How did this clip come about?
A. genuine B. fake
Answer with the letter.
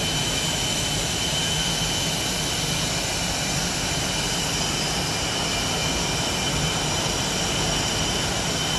A